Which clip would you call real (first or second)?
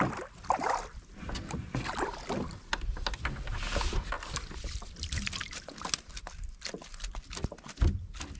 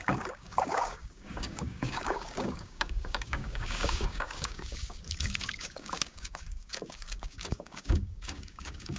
first